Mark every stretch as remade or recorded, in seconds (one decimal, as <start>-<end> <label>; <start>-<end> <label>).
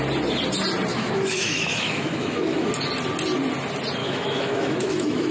0.0-0.9 recorded; 0.9-2.7 remade; 2.7-4.0 recorded; 4.0-5.3 remade